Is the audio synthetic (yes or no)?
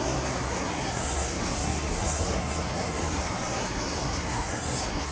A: yes